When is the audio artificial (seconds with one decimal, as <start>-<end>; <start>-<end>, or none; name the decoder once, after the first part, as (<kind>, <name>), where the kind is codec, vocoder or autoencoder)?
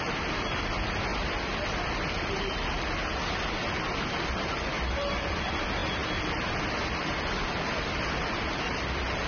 0.0-3.0 (vocoder, BigVGAN v2); 3.7-5.8; 7.0-9.3